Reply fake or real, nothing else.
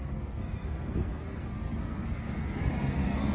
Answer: fake